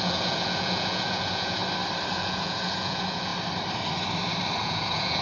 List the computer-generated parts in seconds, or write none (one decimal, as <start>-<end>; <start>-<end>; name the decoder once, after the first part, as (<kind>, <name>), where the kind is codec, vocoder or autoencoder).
0.0-1.6 (vocoder, Vocos); 2.1-3.3; 4.6-5.2